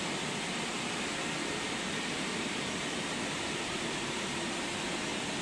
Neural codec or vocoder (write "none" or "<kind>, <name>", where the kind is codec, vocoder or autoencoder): none